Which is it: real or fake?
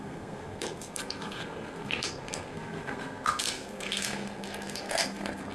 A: fake